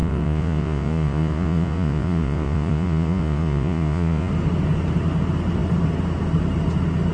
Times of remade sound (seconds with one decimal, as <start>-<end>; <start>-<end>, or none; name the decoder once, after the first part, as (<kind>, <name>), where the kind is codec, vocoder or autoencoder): 0.0-4.3 (vocoder, Vocos)